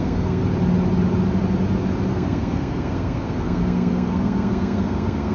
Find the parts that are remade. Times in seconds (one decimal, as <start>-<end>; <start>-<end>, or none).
0.0-0.4; 2.1-5.3

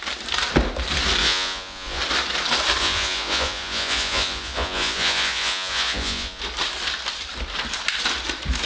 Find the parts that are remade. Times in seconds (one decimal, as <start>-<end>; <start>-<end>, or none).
1.2-2.0; 2.8-6.4

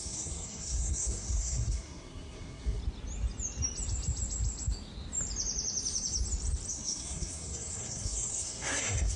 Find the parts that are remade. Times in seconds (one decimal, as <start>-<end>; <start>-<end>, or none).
0.0-2.8; 6.7-9.2